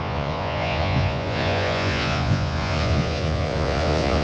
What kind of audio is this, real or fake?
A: fake